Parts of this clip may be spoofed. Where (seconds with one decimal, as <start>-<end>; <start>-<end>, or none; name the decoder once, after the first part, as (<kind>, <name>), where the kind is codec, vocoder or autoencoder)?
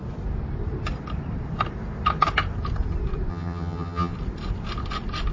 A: 3.3-4.1 (vocoder, HiFi-GAN)